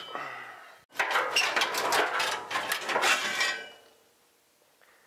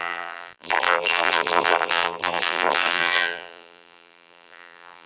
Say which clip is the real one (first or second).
first